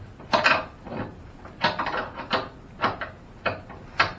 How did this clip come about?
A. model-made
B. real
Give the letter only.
B